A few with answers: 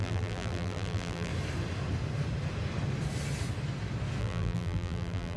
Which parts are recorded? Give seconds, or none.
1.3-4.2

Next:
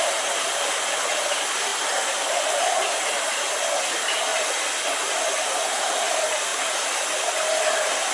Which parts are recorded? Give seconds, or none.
0.0-8.1

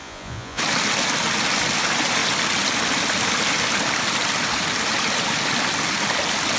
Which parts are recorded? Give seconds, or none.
0.6-6.6

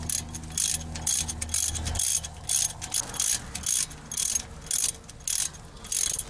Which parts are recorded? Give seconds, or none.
0.0-6.3

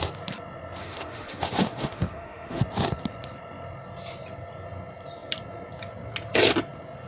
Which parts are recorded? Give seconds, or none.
0.0-0.8; 2.6-7.1

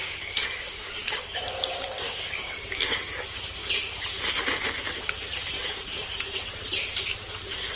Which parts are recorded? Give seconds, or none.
3.6-7.8